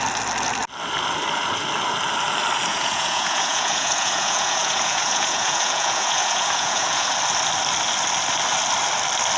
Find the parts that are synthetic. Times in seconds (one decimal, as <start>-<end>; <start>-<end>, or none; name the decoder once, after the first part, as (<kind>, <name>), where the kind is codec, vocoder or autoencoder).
2.7-7.1 (vocoder, Vocos)